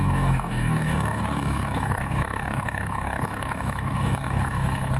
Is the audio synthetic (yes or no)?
yes